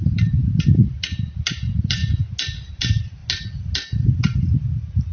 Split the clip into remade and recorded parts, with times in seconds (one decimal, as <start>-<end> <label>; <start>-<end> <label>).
0.0-2.0 remade; 2.0-2.8 recorded; 2.8-3.2 remade; 3.2-5.1 recorded